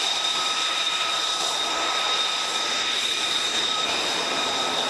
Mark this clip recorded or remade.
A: remade